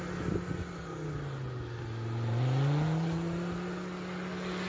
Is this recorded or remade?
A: recorded